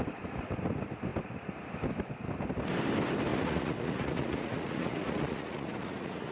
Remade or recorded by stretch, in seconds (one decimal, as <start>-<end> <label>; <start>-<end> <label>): 0.0-3.3 recorded; 3.3-6.3 remade